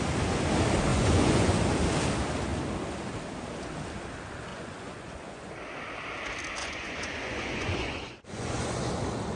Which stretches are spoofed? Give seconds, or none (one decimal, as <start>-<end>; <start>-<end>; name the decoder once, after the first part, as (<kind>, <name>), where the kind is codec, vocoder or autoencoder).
0.9-1.6 (vocoder, Vocos); 4.5-5.5; 6.6-8.9

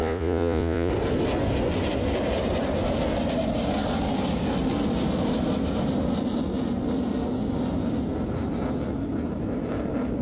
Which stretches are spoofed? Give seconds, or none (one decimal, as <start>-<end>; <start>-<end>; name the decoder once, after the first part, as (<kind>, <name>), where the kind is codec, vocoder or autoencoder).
0.0-0.9 (vocoder, Vocos)

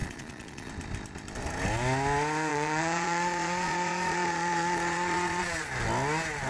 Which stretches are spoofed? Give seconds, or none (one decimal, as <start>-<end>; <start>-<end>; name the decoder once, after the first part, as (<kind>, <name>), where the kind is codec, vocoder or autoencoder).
0.0-0.7 (vocoder, Vocos); 2.5-5.7

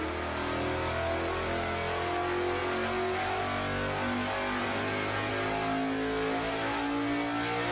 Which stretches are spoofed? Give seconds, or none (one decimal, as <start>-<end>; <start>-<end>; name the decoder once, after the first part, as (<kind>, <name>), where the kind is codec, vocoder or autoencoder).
4.6-5.3 (vocoder, Vocos)

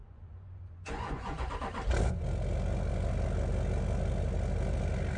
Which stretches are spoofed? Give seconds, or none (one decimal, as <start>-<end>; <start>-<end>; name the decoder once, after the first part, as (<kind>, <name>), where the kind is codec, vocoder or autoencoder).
0.0-1.5 (vocoder, Vocos)

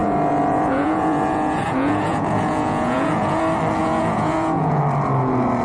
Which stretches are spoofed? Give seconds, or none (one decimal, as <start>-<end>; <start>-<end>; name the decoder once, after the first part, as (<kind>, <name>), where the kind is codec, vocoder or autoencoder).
0.0-3.4 (vocoder, Vocos); 3.8-4.8